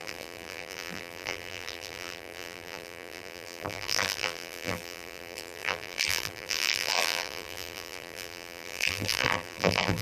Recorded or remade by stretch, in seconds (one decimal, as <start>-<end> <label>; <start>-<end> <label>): 0.0-10.0 remade